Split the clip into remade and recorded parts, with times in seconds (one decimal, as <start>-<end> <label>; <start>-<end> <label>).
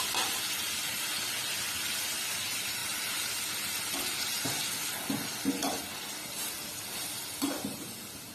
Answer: 0.0-8.3 recorded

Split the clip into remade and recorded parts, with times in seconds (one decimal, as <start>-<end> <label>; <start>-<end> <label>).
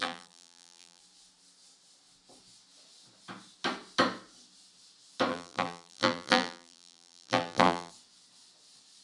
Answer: 0.0-1.0 remade; 1.0-5.3 recorded; 5.3-7.9 remade; 7.9-9.0 recorded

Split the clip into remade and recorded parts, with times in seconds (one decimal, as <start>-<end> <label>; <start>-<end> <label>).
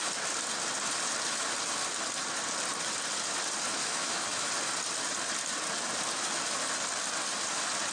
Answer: 0.0-3.8 recorded; 3.8-4.5 remade; 4.5-7.9 recorded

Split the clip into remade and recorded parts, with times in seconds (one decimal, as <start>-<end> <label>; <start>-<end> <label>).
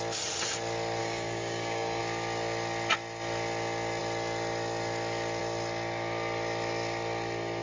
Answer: 0.0-1.0 recorded; 1.0-2.0 remade; 2.0-7.6 recorded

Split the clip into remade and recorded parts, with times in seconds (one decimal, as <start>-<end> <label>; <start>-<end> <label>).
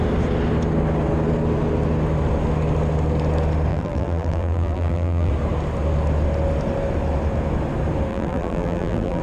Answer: 0.0-3.7 recorded; 3.7-5.3 remade; 5.3-8.1 recorded; 8.1-9.2 remade